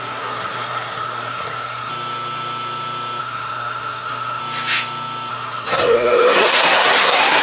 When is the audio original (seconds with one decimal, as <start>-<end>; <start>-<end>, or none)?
1.9-3.2; 4.4-5.3